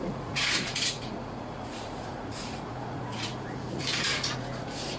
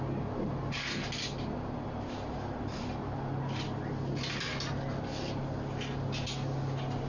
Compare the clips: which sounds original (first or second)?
second